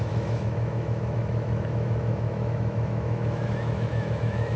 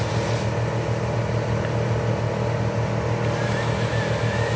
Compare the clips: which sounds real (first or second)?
second